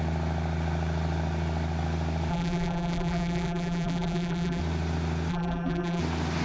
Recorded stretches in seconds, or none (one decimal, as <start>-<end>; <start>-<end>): 0.0-2.3; 4.6-5.3; 6.0-6.4